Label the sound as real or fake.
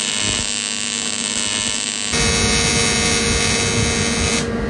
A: real